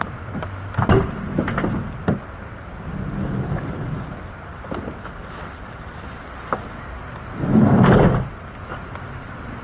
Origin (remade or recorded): recorded